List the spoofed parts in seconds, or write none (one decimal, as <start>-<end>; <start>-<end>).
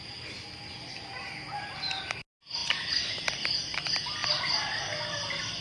none